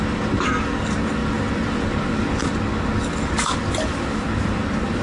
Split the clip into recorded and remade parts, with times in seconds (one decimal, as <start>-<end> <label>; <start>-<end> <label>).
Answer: 0.0-5.0 recorded